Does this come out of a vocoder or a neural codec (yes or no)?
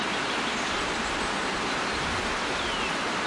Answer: no